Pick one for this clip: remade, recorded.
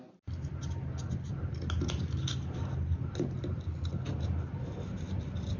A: recorded